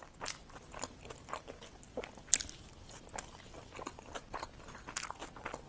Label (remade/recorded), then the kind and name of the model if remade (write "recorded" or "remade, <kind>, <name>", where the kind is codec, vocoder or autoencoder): recorded